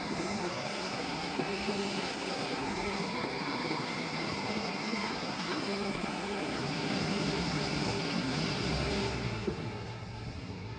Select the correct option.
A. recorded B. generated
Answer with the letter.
B